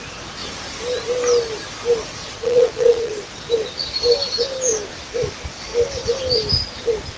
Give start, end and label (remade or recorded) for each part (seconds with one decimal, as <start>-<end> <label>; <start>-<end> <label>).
0.0-2.2 recorded; 2.2-3.1 remade; 3.1-7.2 recorded